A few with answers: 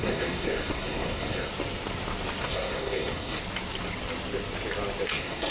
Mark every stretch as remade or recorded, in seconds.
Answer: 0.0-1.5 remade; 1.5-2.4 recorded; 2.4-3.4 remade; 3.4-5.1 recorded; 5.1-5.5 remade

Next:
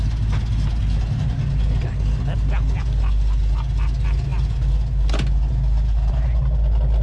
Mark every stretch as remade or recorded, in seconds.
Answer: 0.0-7.0 recorded